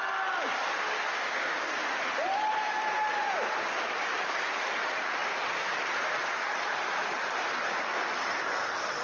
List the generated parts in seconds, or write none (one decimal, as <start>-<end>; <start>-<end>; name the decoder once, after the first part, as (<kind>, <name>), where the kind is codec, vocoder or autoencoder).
1.1-1.7 (codec, DAC)